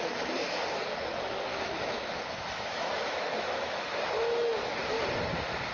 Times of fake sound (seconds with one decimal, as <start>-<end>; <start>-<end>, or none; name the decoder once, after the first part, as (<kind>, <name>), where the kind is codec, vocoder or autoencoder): 1.5-4.9 (autoencoder, DAC-VAE)